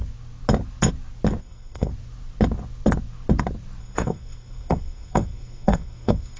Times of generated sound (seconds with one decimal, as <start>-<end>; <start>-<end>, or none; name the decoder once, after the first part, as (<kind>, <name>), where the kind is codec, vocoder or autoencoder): 1.4-1.9 (codec, SNAC); 3.8-6.4